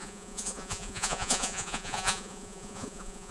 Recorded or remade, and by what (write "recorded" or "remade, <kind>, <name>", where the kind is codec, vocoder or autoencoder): remade, vocoder, Vocos